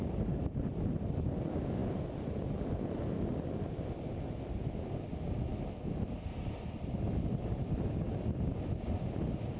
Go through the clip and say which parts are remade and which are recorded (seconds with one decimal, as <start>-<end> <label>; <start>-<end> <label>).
0.0-9.6 recorded